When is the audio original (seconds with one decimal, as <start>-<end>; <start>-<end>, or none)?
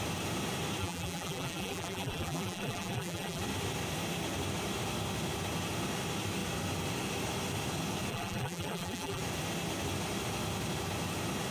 0.0-0.8; 3.4-8.1; 9.2-11.5